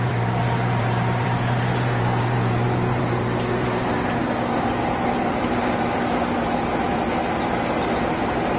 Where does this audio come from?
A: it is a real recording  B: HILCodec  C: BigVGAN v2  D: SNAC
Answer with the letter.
C